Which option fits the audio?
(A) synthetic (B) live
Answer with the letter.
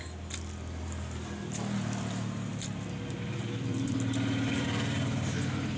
A